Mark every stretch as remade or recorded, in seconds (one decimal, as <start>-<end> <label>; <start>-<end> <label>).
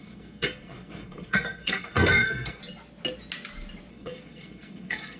0.0-2.6 remade; 2.6-3.9 recorded; 3.9-5.2 remade